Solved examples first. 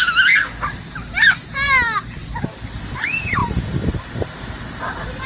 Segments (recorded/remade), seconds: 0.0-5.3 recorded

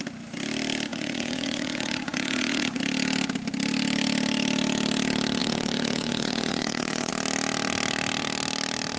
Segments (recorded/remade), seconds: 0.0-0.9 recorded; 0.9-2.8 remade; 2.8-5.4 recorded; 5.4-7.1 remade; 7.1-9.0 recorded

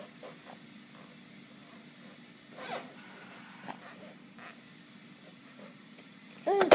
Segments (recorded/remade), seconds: 0.0-5.3 recorded; 5.3-6.3 remade; 6.3-6.7 recorded

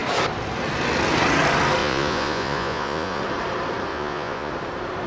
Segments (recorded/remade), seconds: 0.0-1.8 recorded; 1.8-3.2 remade; 3.2-3.9 recorded; 3.9-4.5 remade; 4.5-5.1 recorded

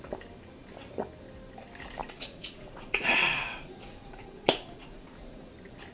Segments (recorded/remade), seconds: 0.0-2.0 recorded; 2.0-5.5 remade; 5.5-5.9 recorded

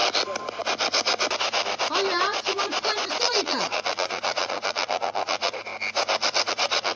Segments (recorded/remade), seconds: 0.0-3.2 recorded; 3.2-5.7 remade; 5.7-6.5 recorded; 6.5-7.0 remade